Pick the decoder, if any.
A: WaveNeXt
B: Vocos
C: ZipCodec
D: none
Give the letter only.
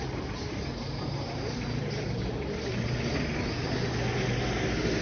D